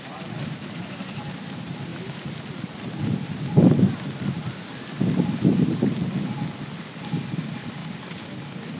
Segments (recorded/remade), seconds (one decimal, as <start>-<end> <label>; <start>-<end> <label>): 0.0-8.8 recorded